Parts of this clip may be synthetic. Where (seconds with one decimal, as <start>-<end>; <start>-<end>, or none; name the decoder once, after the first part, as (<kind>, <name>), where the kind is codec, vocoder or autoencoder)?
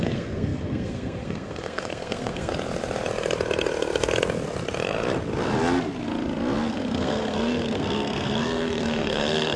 0.0-2.5 (codec, SNAC); 6.7-9.6